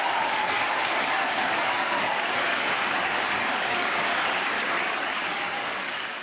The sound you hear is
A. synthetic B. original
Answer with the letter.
A